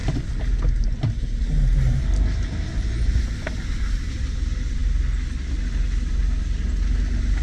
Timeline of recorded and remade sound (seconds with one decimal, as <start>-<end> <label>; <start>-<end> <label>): 0.0-7.4 recorded